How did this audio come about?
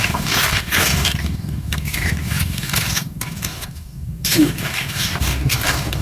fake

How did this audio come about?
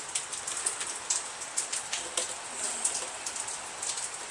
real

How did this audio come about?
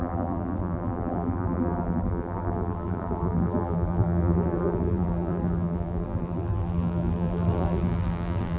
fake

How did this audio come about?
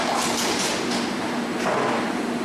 real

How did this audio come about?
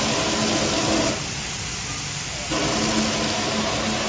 real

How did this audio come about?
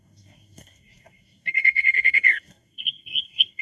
fake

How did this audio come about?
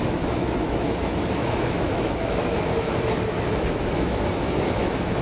fake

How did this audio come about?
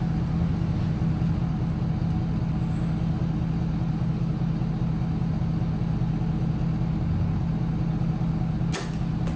real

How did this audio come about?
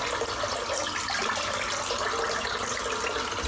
real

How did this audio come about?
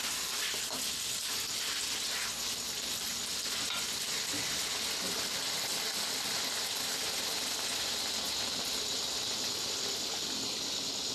real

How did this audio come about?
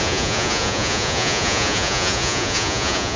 fake